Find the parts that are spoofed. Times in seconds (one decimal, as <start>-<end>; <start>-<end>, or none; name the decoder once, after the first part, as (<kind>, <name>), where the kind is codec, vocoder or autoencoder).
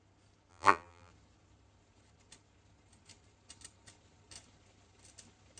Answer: 0.5-1.1 (vocoder, BigVGAN v2)